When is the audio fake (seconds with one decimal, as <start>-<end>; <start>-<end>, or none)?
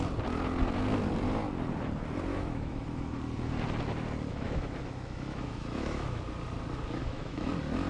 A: 2.3-3.2; 4.3-6.2; 7.0-7.5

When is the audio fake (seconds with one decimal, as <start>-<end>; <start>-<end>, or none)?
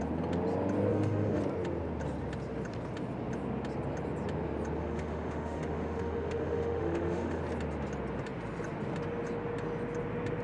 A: 0.9-1.4; 4.8-7.4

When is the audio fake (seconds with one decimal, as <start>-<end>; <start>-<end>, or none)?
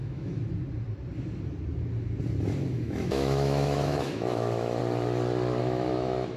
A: 0.0-0.4; 2.7-4.8; 5.6-6.4